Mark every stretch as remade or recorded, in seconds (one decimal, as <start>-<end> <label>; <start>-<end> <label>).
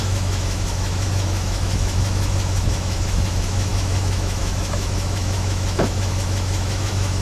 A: 0.0-7.2 remade